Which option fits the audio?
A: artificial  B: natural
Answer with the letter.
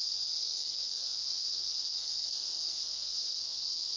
A